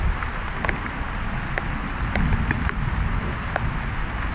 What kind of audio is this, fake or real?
real